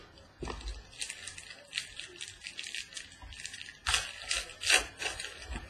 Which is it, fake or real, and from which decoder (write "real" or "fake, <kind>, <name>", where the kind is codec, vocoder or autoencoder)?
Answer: real